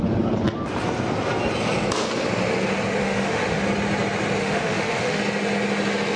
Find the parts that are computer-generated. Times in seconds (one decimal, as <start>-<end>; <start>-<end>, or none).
3.0-3.6; 4.4-5.2